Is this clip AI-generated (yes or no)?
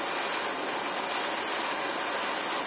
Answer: no